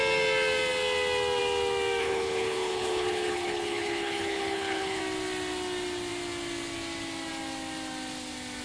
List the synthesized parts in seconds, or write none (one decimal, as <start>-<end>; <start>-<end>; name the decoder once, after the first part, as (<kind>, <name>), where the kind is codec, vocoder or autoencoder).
2.0-5.0 (codec, HILCodec)